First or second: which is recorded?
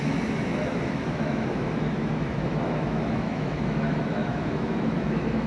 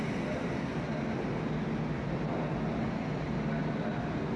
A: second